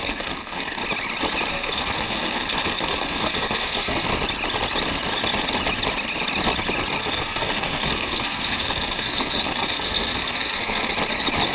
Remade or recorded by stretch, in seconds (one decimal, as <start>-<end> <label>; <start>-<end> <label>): 0.0-0.8 remade; 0.8-1.5 recorded; 1.5-4.1 remade; 4.1-7.0 recorded; 7.0-10.9 remade; 10.9-11.5 recorded